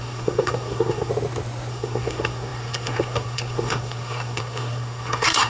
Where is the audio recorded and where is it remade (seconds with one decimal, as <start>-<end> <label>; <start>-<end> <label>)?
0.0-1.1 remade; 1.1-1.7 recorded; 1.7-5.5 remade